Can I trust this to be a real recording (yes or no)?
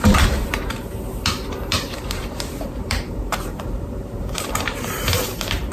no